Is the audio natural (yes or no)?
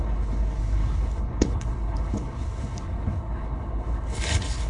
no